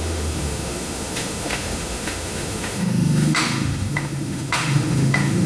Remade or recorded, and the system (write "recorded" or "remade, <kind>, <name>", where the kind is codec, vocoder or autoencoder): remade, autoencoder, DAC-VAE